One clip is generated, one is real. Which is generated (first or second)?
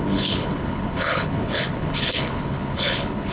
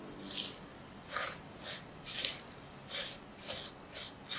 first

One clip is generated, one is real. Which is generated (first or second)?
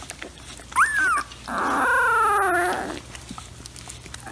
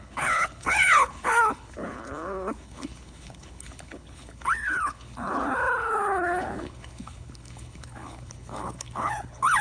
second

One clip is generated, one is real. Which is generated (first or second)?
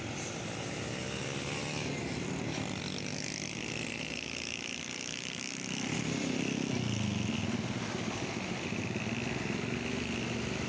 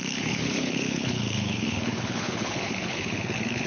second